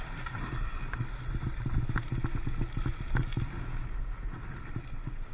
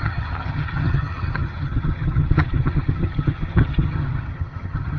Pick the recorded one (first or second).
first